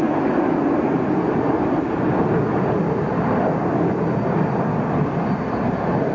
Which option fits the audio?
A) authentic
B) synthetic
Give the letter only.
A